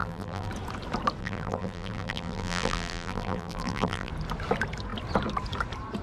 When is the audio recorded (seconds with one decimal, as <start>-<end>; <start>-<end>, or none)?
0.5-1.2; 4.1-6.0